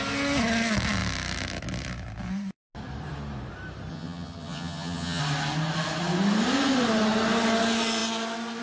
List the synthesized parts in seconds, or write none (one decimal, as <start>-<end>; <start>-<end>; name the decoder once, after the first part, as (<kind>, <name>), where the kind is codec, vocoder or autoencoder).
3.9-5.2 (vocoder, HiFi-GAN)